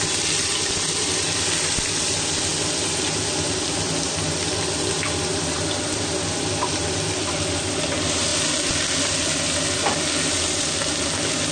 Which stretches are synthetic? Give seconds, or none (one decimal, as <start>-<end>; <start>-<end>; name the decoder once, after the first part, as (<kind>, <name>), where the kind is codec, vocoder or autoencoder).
none